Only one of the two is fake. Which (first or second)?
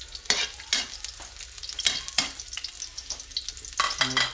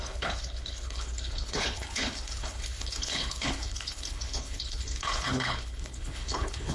second